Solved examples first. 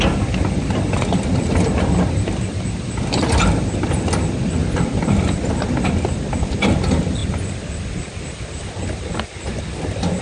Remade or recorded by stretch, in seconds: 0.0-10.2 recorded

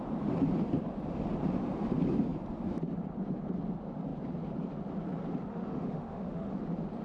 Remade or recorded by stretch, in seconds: 0.0-5.5 recorded; 5.5-6.5 remade; 6.5-7.0 recorded

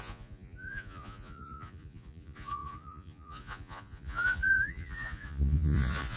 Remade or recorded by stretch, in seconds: 0.0-6.2 remade

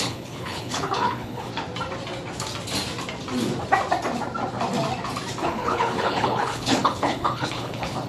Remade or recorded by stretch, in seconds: 0.0-1.5 remade; 1.5-5.4 recorded; 5.4-8.1 remade

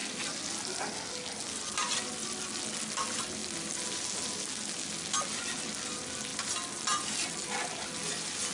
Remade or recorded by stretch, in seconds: 0.0-8.5 recorded

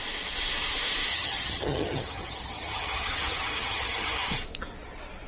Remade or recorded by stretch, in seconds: 0.0-1.1 recorded; 1.1-4.3 remade; 4.3-5.3 recorded

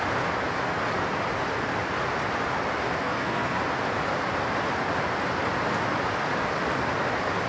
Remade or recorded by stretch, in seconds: 0.0-3.0 recorded; 3.0-3.6 remade; 3.6-7.5 recorded

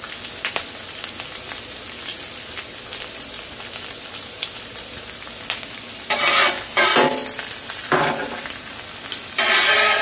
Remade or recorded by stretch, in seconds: 0.0-10.0 recorded